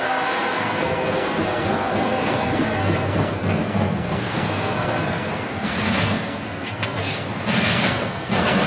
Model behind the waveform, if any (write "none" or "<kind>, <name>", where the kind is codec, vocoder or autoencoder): codec, SNAC